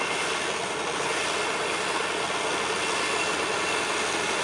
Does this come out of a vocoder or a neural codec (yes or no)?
no